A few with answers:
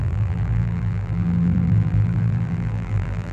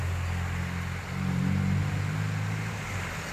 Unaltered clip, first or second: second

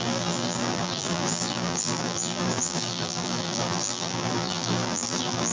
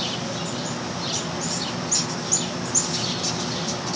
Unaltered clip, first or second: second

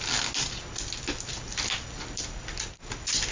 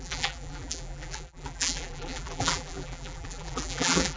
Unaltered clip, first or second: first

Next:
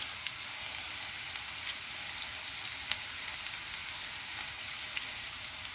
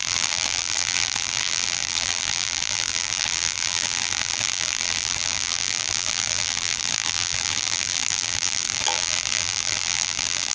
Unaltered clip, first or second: first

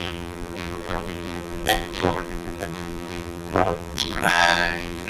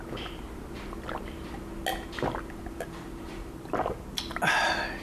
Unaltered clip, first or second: second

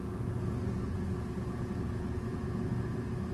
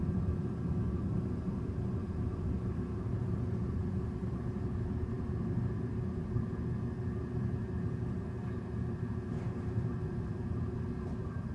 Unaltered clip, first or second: first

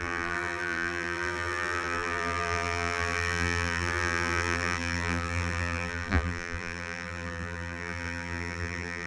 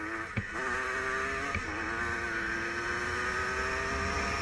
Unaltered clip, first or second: second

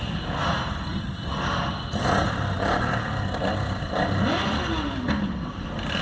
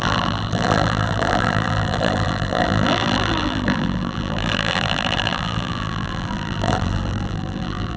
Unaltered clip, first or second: first